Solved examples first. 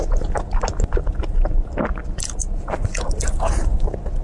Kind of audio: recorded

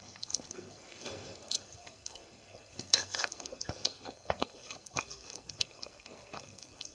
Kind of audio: remade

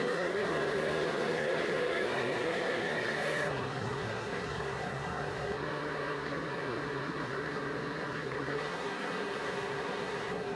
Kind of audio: remade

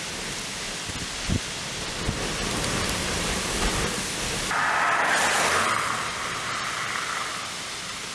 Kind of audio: recorded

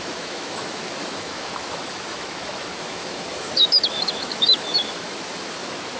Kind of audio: remade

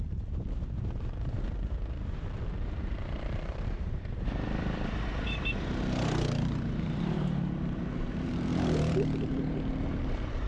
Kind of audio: remade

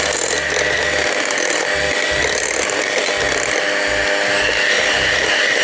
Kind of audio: recorded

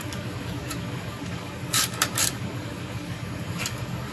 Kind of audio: remade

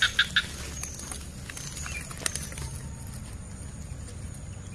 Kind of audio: recorded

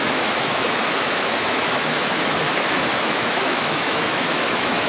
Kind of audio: remade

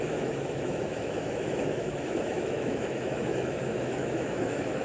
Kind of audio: remade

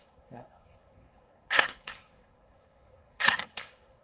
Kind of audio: remade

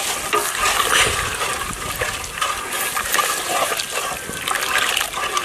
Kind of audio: recorded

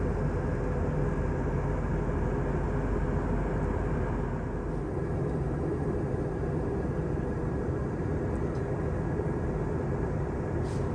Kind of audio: recorded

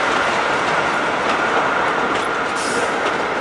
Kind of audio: recorded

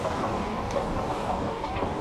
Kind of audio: remade